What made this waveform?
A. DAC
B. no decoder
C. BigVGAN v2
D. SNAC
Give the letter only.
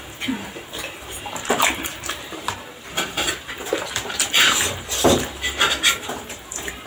C